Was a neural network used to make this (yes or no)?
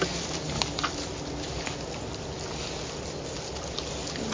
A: no